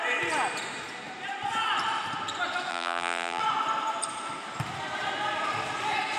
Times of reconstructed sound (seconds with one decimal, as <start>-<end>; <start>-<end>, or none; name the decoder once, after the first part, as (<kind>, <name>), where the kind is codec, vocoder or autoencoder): 2.7-3.4 (vocoder, BigVGAN v2)